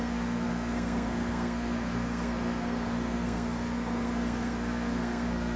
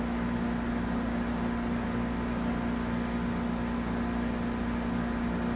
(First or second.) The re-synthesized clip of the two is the first